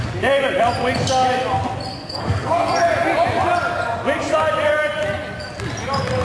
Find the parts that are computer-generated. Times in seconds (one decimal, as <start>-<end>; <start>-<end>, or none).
1.9-2.7